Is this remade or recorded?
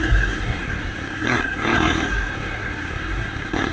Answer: remade